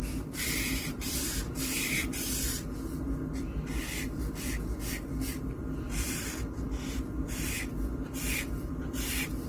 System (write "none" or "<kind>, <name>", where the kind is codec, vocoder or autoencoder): vocoder, BigVGAN v2